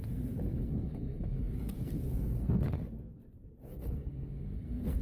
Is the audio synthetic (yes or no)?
yes